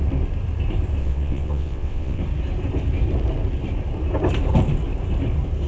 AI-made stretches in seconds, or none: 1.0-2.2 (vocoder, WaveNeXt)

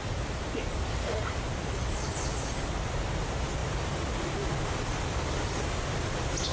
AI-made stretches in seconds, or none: none

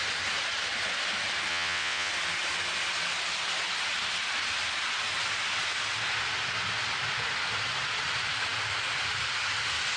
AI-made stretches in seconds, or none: 1.5-2.1 (vocoder, WaveNeXt)

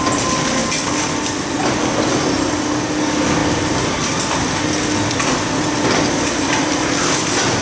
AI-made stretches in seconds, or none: none

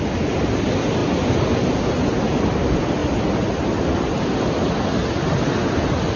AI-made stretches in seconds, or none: none